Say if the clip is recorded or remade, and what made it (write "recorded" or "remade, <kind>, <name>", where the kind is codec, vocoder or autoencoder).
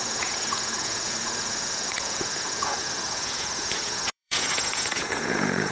remade, vocoder, Vocos